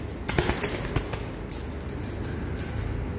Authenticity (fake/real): real